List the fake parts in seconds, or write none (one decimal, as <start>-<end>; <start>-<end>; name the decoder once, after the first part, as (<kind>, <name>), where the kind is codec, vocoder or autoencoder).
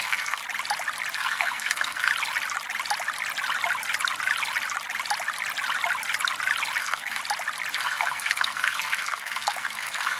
0.0-0.4 (codec, SNAC); 1.1-2.1; 6.8-7.2; 7.7-10.2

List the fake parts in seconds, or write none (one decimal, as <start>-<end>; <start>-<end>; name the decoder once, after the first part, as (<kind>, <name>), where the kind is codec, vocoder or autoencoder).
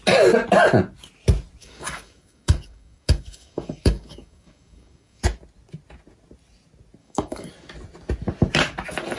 1.6-5.2 (codec, DAC); 7.0-7.5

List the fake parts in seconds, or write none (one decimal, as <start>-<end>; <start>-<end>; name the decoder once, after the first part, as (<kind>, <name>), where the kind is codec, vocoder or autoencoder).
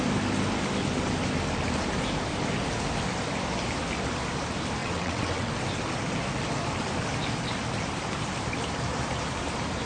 4.8-5.5 (vocoder, WaveNeXt)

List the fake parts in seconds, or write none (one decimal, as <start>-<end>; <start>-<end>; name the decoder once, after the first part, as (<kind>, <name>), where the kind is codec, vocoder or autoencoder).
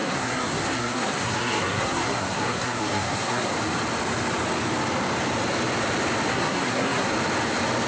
0.0-3.5 (codec, SNAC); 6.3-7.1